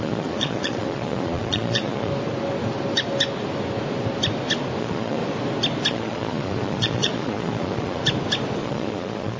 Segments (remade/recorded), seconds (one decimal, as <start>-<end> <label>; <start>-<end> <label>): 0.0-2.1 remade; 2.1-4.8 recorded; 4.8-5.2 remade; 5.2-5.9 recorded; 5.9-8.0 remade; 8.0-8.6 recorded; 8.6-9.4 remade